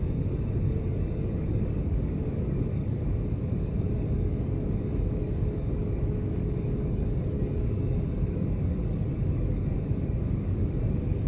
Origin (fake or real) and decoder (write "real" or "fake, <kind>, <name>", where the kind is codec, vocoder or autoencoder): fake, codec, DAC